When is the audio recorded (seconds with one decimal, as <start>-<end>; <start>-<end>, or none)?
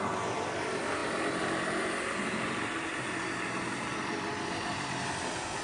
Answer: 1.0-1.8